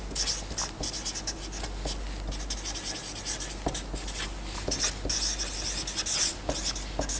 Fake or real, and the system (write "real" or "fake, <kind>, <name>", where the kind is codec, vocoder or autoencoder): real